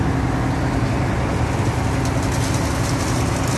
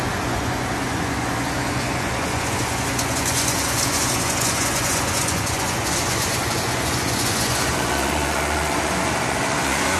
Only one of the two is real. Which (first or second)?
first